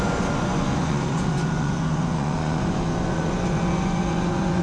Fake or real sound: fake